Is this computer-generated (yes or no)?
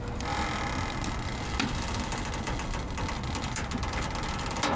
no